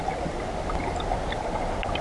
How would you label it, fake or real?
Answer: real